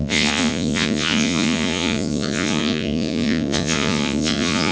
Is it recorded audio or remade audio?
remade